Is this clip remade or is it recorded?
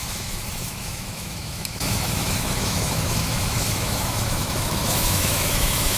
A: remade